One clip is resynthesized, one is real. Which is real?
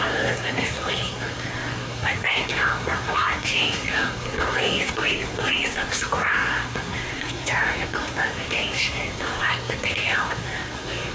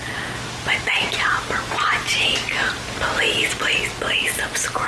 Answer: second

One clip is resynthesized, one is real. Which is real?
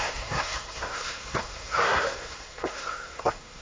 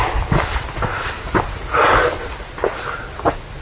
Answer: second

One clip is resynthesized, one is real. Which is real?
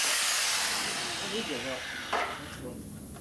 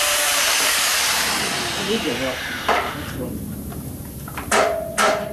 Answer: first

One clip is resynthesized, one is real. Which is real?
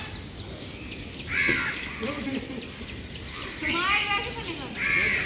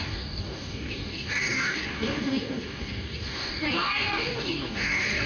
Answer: first